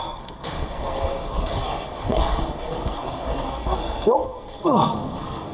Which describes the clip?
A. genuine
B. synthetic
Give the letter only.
B